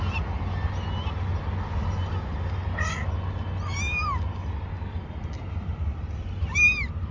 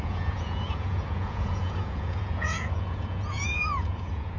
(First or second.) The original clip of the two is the first